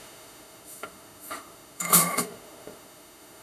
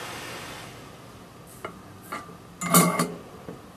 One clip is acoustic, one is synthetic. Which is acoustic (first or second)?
second